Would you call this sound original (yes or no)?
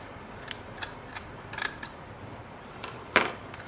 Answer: no